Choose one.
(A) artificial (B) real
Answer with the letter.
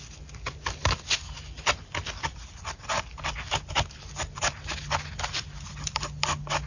B